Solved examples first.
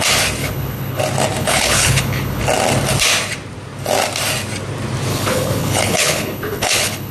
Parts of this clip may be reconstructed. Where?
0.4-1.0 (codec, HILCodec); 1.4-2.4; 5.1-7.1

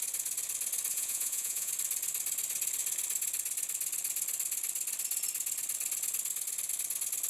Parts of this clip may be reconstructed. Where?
0.9-1.7 (vocoder, Vocos)

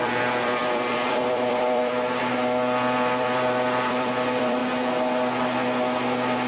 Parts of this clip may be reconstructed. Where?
0.0-4.6 (vocoder, BigVGAN v2)

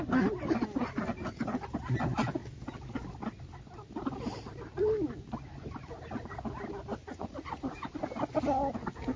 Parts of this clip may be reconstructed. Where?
7.0-7.9 (vocoder, Vocos)

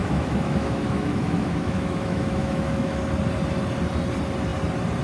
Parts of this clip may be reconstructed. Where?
0.0-3.0 (autoencoder, DAC-VAE)

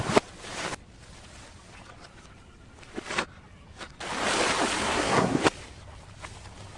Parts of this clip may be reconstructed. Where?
4.8-5.4 (codec, SNAC)

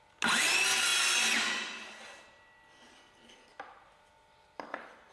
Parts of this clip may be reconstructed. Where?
none

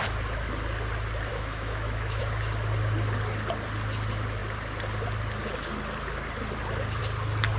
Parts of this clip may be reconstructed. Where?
1.3-2.2 (autoencoder, DAC-VAE)